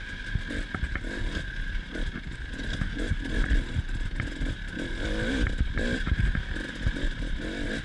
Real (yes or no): yes